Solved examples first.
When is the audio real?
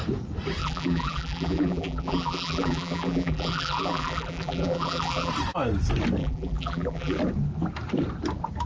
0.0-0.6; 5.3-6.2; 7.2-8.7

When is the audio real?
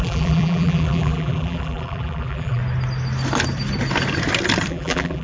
2.6-4.7